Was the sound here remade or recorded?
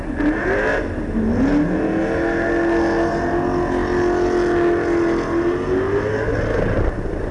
recorded